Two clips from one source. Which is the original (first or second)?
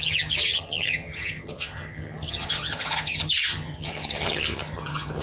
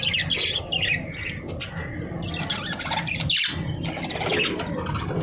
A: second